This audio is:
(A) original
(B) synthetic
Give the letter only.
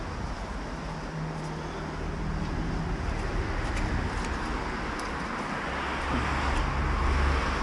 A